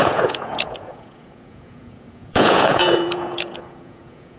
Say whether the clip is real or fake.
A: fake